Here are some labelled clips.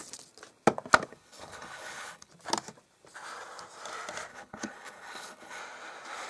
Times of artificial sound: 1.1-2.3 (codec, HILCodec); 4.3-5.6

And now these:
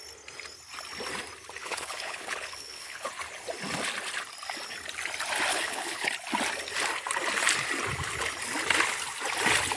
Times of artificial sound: 1.6-3.1 (codec, HILCodec); 5.5-6.1

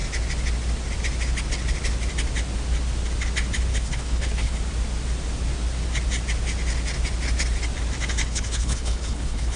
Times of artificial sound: 3.7-4.6 (codec, HILCodec); 8.2-9.6

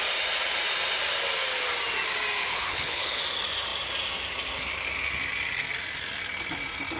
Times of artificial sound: 2.5-3.2 (codec, HILCodec)

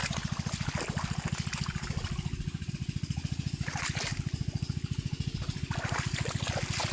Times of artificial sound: none

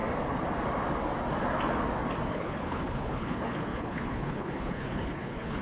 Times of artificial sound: 2.3-5.6 (codec, HILCodec)

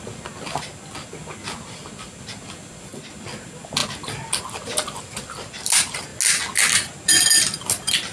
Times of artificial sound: none